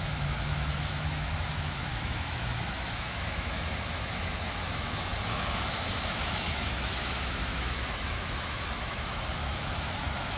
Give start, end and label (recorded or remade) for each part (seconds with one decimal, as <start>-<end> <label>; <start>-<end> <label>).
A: 0.0-10.4 remade